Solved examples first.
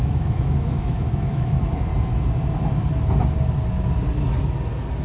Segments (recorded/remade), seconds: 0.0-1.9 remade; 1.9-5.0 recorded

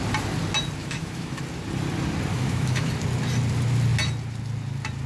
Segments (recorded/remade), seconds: 0.0-0.8 recorded; 0.8-1.4 remade; 1.4-2.3 recorded; 2.3-2.9 remade; 2.9-5.1 recorded

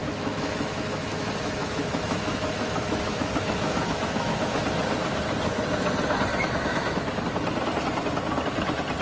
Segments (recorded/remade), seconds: 0.0-4.6 remade; 4.6-6.3 recorded; 6.3-7.2 remade; 7.2-9.0 recorded

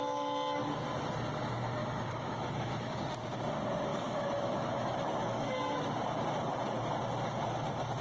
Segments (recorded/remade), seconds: 0.0-1.8 recorded; 1.8-3.0 remade; 3.0-3.9 recorded; 3.9-5.6 remade; 5.6-8.0 recorded

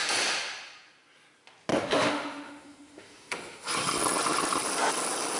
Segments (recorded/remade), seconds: 0.0-1.7 recorded; 1.7-3.7 remade; 3.7-5.4 recorded